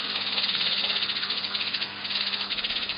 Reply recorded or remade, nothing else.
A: remade